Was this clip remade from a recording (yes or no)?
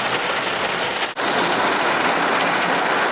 no